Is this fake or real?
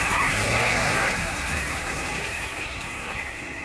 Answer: fake